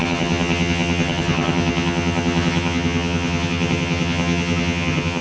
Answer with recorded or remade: remade